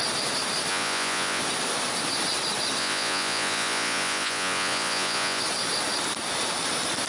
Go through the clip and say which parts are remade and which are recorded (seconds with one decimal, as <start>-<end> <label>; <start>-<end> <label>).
0.0-0.7 recorded; 0.7-1.4 remade; 1.4-2.8 recorded; 2.8-5.4 remade; 5.4-7.1 recorded